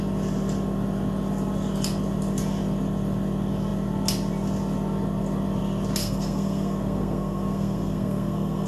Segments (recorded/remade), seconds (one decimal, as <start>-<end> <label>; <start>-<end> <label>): 0.0-6.0 recorded; 6.0-8.7 remade